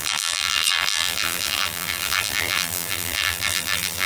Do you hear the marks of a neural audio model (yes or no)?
yes